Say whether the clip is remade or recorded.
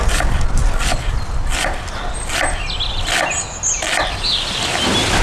recorded